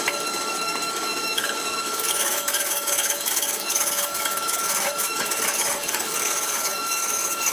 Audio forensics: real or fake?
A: fake